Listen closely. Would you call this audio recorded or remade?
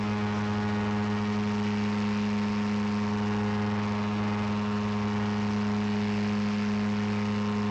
recorded